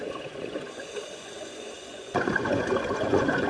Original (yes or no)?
no